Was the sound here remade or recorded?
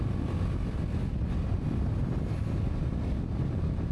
recorded